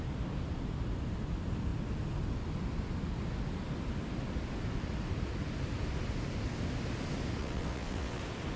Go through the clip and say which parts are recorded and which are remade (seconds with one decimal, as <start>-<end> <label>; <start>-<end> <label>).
0.0-7.4 recorded; 7.4-8.2 remade; 8.2-8.6 recorded